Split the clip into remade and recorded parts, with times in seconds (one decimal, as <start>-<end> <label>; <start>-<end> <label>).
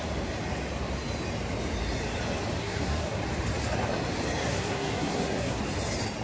0.0-2.6 recorded; 2.6-3.2 remade; 3.2-4.4 recorded; 4.4-5.6 remade; 5.6-6.2 recorded